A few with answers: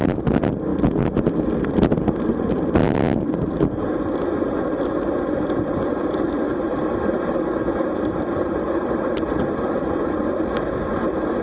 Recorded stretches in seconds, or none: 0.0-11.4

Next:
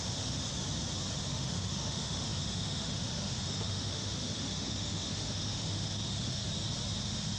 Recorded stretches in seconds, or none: 0.4-1.3; 6.4-7.0

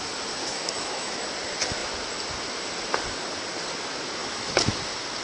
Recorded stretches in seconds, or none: 0.0-0.4; 1.1-4.2; 4.8-5.2

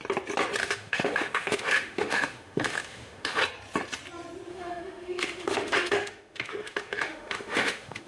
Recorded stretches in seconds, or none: 0.0-0.6; 3.4-4.5

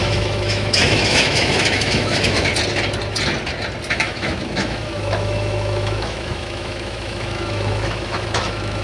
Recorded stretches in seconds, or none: 2.5-3.9